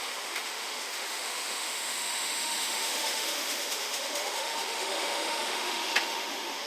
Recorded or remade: remade